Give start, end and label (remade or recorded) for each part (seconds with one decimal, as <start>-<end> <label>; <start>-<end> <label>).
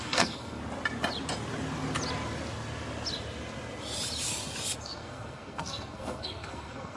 0.0-0.6 remade; 0.6-4.8 recorded; 4.8-7.0 remade